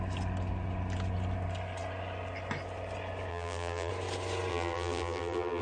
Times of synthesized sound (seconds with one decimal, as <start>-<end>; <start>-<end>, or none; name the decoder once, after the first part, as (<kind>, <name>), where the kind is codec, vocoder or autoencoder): 3.3-3.9 (vocoder, BigVGAN v2); 4.5-5.6